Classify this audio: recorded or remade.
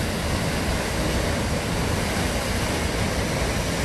recorded